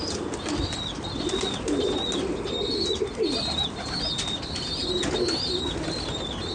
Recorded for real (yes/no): yes